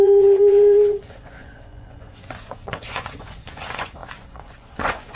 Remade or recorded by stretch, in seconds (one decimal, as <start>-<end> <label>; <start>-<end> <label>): 0.0-5.2 remade